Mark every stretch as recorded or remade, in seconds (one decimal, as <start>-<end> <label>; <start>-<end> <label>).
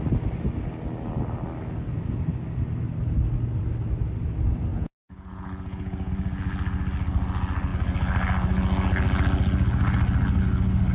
0.0-4.7 recorded; 4.7-6.1 remade; 6.1-10.9 recorded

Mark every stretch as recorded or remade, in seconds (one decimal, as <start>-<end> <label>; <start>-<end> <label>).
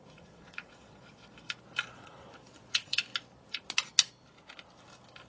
0.0-1.2 remade; 1.2-1.9 recorded; 1.9-3.1 remade; 3.1-5.3 recorded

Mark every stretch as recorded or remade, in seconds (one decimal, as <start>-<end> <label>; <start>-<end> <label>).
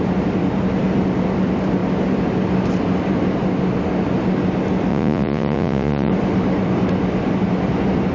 0.0-4.9 recorded; 4.9-6.1 remade; 6.1-8.1 recorded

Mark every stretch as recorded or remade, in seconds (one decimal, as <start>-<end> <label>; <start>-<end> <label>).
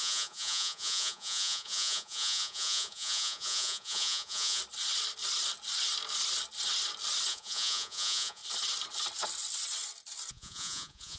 0.0-4.6 remade; 4.6-7.3 recorded; 7.3-8.4 remade; 8.4-10.3 recorded; 10.3-11.2 remade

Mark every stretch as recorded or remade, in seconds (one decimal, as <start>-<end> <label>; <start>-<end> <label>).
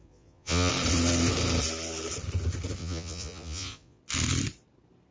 0.0-0.7 remade; 0.7-2.8 recorded; 2.8-4.0 remade; 4.0-5.1 recorded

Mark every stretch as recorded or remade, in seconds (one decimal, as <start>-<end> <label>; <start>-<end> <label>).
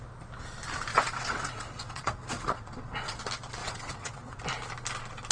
0.0-0.9 recorded; 0.9-3.2 remade; 3.2-3.6 recorded; 3.6-4.4 remade; 4.4-5.3 recorded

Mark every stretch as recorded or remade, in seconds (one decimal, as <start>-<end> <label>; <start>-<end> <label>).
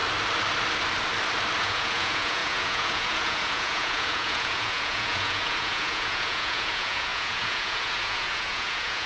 0.0-1.6 recorded; 1.6-9.1 remade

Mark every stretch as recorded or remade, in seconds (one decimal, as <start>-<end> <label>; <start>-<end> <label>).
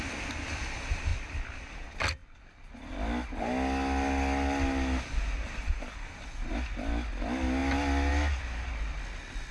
0.0-9.5 recorded